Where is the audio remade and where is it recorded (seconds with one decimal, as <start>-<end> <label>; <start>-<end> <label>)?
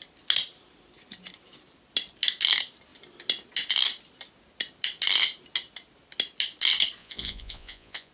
0.0-7.0 recorded; 7.0-8.1 remade